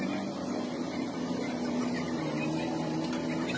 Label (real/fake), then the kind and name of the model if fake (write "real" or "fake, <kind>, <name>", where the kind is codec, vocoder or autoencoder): real